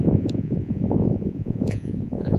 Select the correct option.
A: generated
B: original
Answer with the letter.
A